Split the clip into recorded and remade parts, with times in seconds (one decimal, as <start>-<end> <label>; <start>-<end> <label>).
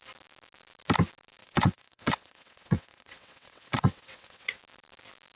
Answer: 0.0-1.4 recorded; 1.4-4.6 remade; 4.6-5.4 recorded